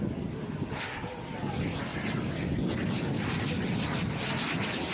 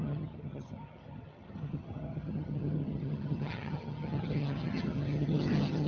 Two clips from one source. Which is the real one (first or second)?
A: first